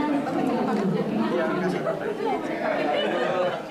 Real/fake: real